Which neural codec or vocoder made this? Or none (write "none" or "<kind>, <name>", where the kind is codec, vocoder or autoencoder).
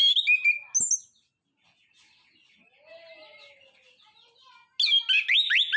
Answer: none